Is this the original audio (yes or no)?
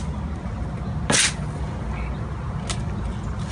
yes